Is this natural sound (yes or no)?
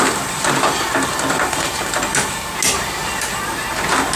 yes